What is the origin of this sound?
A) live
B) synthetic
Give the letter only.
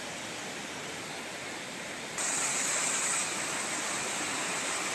A